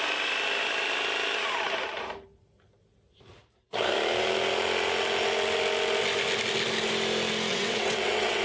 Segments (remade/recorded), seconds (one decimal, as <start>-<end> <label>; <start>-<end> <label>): 0.0-7.5 recorded; 7.5-8.4 remade